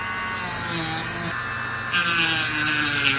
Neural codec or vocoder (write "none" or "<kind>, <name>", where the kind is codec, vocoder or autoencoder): none